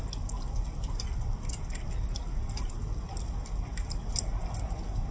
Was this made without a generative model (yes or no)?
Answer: yes